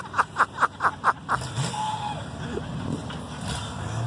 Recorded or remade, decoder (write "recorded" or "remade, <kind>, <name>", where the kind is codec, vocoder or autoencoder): recorded